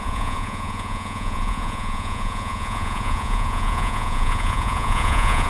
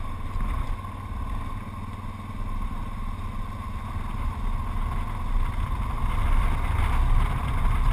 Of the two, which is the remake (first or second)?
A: first